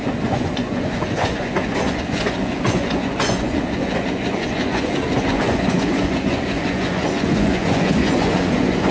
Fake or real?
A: fake